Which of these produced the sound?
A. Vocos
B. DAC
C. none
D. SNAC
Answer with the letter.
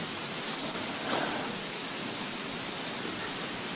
C